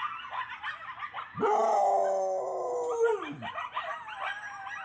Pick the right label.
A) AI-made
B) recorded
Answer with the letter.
B